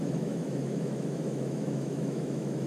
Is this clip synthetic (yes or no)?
yes